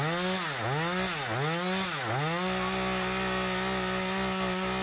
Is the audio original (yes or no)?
yes